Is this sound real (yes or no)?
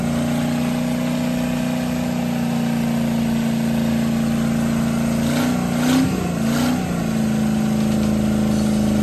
yes